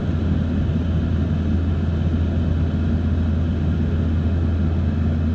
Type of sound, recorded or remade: recorded